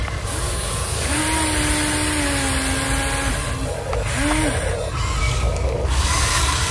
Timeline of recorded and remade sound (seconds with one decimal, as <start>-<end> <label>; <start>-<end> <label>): 0.0-1.2 remade; 1.2-5.2 recorded; 5.2-6.7 remade